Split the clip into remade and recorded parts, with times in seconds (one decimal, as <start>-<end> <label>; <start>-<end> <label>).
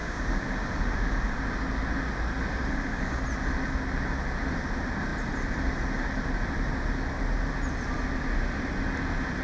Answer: 0.0-1.4 remade; 1.4-2.5 recorded; 2.5-3.2 remade; 3.2-9.4 recorded